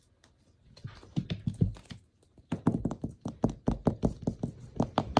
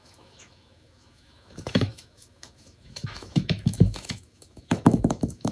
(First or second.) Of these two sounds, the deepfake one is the second